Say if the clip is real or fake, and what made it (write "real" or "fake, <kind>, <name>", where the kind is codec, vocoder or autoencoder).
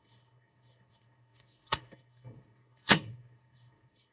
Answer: fake, codec, SNAC